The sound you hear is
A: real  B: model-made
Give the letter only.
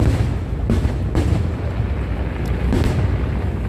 A